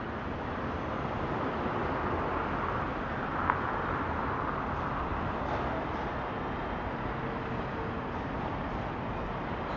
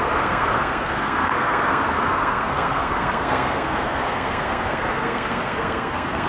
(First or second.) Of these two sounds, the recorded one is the first